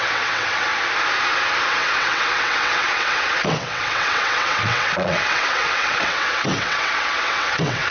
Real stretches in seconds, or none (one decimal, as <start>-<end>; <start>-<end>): 0.7-1.7